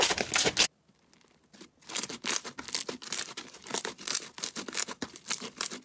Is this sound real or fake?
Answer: real